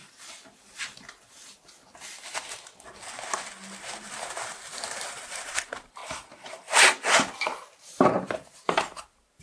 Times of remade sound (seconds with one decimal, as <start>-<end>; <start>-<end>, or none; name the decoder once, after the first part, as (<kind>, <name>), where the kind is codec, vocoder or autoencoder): 5.1-6.0 (vocoder, BigVGAN v2); 8.0-9.4